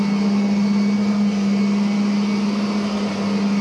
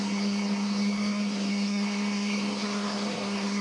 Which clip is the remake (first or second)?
second